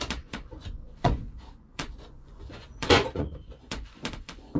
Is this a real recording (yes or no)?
no